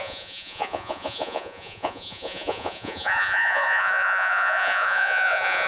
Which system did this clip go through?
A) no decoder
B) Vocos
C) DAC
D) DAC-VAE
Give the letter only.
B